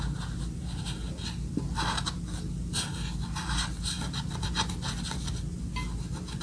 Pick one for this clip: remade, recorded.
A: recorded